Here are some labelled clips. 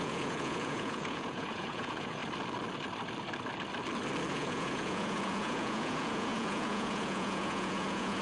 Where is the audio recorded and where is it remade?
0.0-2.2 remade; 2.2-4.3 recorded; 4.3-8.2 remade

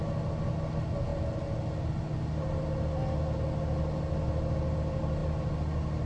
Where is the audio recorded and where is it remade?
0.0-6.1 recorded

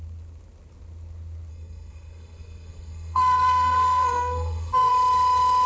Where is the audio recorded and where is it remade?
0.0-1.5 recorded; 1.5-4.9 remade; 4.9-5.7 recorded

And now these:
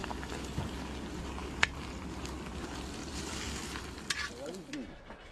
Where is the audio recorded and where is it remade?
0.0-0.6 remade; 0.6-1.4 recorded; 1.4-2.5 remade; 2.5-3.0 recorded; 3.0-3.8 remade; 3.8-5.3 recorded